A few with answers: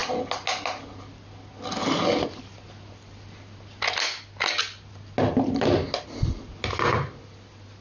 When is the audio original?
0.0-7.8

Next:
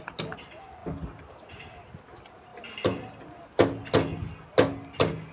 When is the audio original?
0.0-5.3

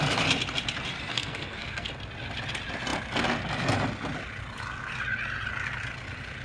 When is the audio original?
0.0-1.1; 1.9-6.4

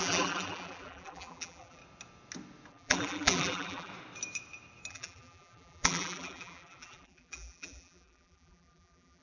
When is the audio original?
1.8-2.7; 3.9-4.9

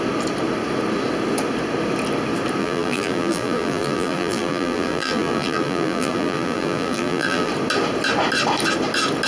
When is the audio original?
0.0-2.6; 7.5-9.3

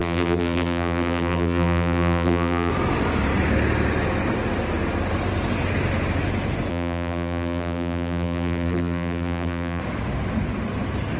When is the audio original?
2.7-6.7; 9.8-11.2

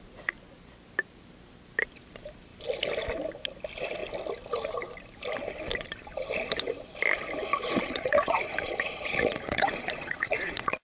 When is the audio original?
0.0-7.4

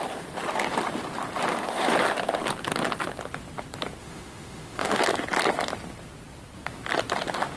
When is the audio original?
0.0-4.0; 5.0-7.6